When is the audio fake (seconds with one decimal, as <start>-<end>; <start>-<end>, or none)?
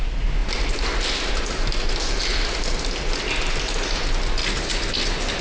none